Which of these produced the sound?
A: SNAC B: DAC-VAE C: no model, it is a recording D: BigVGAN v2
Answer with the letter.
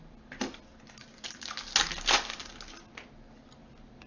C